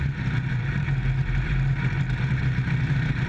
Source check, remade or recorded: remade